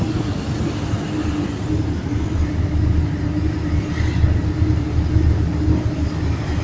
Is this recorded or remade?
recorded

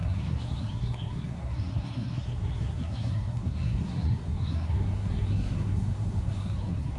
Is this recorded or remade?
remade